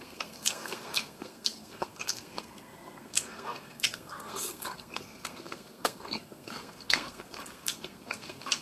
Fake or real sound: fake